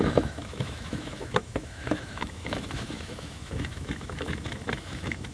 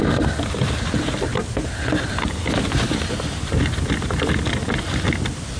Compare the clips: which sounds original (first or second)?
second